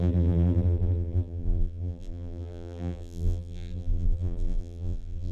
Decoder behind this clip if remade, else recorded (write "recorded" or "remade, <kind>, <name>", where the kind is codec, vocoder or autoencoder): remade, vocoder, BigVGAN v2